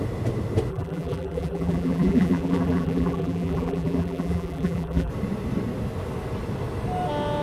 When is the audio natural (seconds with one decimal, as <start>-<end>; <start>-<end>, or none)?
0.0-0.7; 5.1-7.4